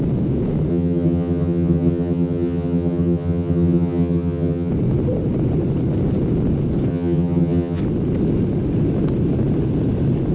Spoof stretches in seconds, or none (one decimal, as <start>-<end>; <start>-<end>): 0.7-4.7; 6.9-7.8